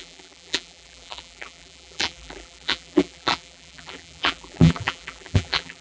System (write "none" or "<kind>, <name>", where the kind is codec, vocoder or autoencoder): vocoder, BigVGAN v2